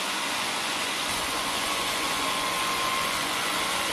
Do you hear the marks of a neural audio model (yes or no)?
yes